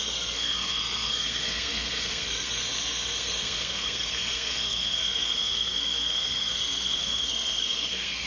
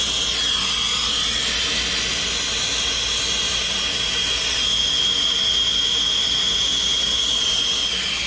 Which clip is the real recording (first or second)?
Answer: second